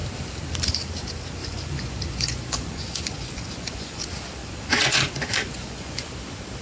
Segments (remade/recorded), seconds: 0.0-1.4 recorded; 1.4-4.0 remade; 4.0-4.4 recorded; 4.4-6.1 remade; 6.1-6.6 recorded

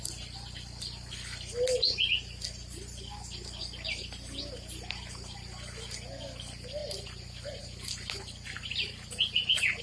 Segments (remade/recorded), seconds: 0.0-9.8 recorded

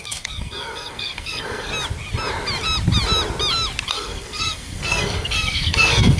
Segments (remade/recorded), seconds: 0.0-1.7 remade; 1.7-3.9 recorded; 3.9-6.2 remade

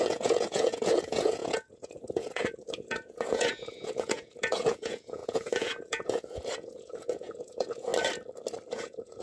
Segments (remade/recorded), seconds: 0.0-7.9 remade; 7.9-8.7 recorded; 8.7-9.2 remade

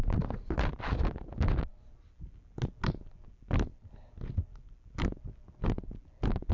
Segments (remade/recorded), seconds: 0.0-6.5 recorded

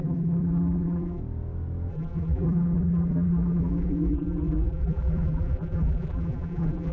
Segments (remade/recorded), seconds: 0.0-1.2 remade; 1.2-1.9 recorded; 1.9-6.9 remade

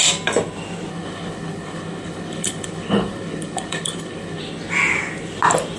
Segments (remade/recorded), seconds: 0.0-0.9 recorded; 0.9-4.4 remade; 4.4-5.8 recorded